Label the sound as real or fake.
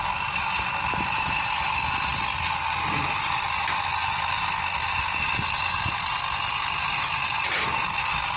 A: real